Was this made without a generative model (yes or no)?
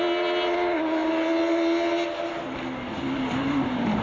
yes